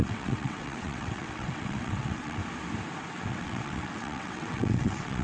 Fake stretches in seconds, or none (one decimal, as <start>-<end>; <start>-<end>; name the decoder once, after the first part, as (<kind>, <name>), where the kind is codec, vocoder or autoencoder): 0.0-2.4 (vocoder, WaveNeXt); 3.1-5.2